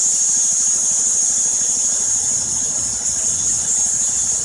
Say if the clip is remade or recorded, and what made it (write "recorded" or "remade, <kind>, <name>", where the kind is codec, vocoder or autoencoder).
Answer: recorded